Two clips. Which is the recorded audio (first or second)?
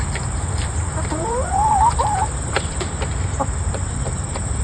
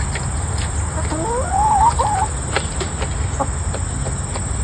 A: second